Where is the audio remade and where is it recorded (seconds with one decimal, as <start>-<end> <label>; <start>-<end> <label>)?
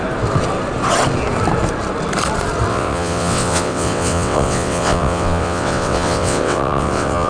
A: 0.0-2.7 recorded; 2.7-7.3 remade